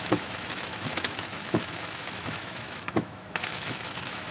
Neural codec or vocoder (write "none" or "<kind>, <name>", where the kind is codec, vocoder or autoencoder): autoencoder, DAC-VAE